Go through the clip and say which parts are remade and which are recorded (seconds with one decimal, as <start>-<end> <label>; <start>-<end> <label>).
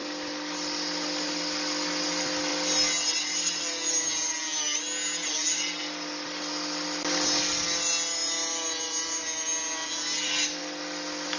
0.0-11.4 recorded